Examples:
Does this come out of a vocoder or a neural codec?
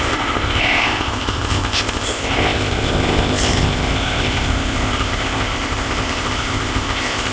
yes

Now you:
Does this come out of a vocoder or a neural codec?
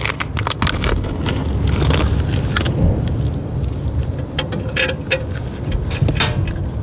no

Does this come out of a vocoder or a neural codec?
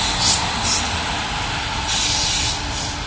no